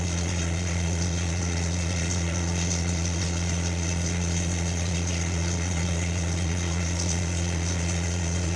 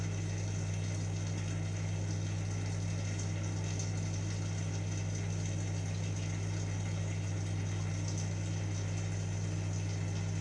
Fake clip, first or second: first